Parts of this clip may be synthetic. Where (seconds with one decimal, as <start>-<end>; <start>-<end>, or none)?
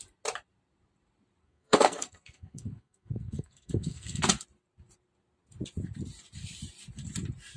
1.4-4.2